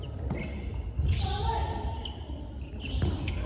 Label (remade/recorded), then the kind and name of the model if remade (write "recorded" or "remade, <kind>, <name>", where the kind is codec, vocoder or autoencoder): recorded